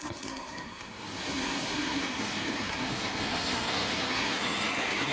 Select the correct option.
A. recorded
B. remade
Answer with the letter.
B